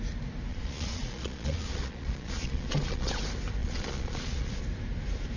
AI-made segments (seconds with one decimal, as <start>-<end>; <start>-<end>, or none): 0.5-3.2; 3.6-4.6